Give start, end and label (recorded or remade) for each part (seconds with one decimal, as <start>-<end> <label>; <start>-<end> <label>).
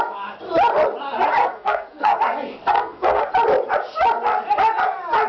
0.0-1.4 recorded; 1.4-2.2 remade; 2.2-2.7 recorded; 2.7-3.3 remade; 3.3-5.3 recorded